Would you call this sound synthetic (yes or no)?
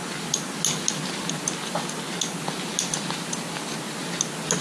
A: no